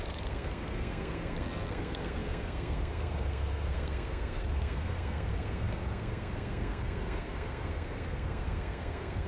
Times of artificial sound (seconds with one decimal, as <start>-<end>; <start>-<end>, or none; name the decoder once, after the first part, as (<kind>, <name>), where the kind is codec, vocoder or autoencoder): 0.0-9.3 (codec, SNAC)